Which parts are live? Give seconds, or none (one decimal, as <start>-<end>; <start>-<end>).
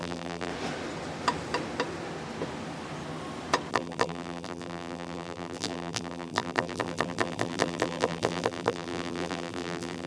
0.5-3.7